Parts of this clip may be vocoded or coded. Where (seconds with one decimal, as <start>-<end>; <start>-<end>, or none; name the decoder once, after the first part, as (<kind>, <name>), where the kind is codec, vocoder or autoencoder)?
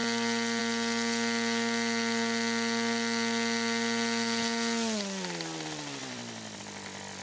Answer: 6.0-6.6 (vocoder, BigVGAN v2)